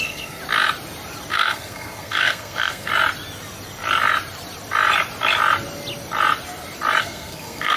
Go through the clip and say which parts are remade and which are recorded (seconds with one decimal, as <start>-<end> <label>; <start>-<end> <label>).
0.0-0.4 remade; 0.4-1.3 recorded; 1.3-2.9 remade; 2.9-7.0 recorded; 7.0-7.8 remade